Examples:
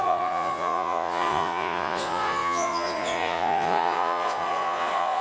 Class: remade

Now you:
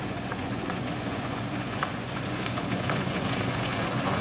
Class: remade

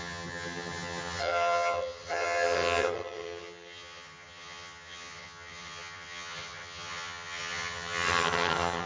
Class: remade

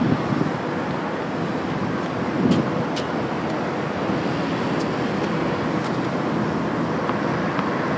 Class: recorded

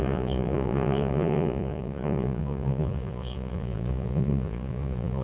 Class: remade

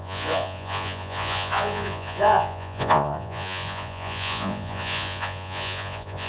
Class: remade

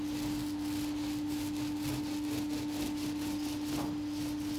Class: recorded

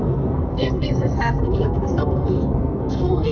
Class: remade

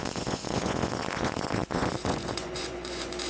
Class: remade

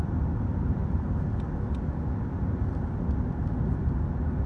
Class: recorded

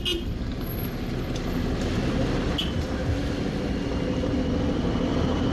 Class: recorded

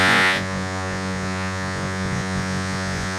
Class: remade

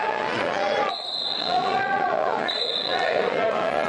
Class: remade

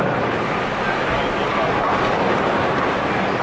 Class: recorded